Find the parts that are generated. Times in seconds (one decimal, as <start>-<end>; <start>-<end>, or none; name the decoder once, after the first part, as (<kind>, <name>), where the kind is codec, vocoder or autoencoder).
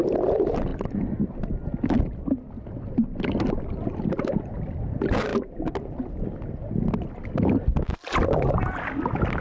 none